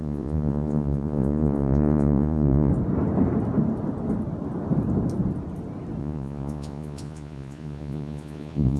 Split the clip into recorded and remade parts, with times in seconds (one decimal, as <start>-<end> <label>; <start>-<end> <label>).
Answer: 0.0-2.7 remade; 2.7-6.0 recorded; 6.0-8.8 remade